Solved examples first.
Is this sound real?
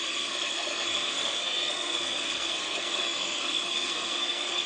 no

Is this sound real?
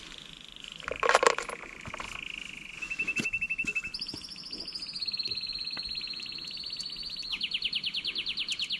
yes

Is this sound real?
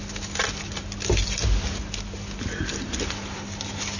yes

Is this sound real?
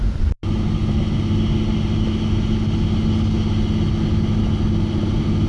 yes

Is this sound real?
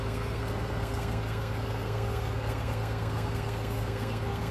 no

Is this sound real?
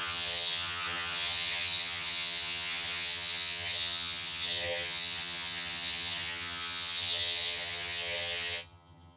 no